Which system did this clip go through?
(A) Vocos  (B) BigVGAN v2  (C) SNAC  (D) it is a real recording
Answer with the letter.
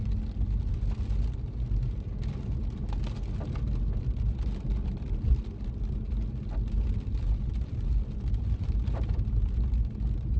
D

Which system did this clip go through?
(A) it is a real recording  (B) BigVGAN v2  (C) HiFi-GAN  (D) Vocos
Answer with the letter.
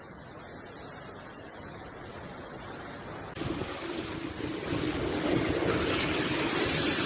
A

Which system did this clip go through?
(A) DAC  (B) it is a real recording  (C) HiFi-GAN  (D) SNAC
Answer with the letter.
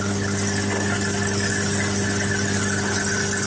B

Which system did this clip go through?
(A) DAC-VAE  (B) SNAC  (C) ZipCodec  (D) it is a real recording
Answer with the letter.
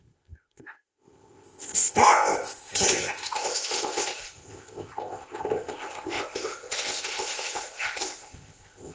C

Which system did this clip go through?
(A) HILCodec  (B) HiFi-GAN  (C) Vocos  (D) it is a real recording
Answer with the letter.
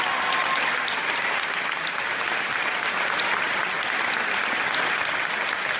D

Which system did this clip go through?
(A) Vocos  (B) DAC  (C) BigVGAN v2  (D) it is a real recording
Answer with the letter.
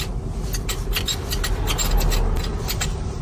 D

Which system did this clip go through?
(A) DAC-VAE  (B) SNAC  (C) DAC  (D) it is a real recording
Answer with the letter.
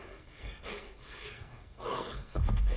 B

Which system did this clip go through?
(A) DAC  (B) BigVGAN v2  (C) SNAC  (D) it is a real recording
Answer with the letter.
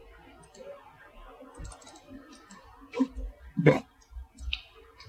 D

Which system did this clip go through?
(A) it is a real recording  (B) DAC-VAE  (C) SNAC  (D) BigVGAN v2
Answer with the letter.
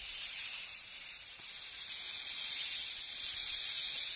D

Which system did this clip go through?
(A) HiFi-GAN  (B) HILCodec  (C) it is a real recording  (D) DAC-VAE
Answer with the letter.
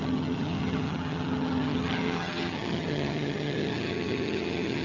A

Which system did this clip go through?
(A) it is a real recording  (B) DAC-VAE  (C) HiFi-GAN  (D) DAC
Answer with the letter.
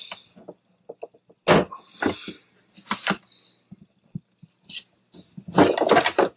A